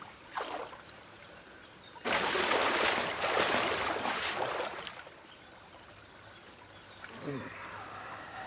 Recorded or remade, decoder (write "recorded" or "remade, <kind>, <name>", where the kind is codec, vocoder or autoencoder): remade, vocoder, BigVGAN v2